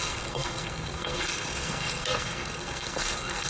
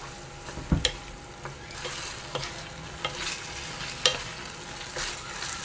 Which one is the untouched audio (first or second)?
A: second